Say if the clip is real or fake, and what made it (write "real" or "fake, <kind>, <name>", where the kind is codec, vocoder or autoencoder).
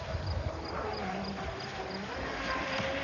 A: real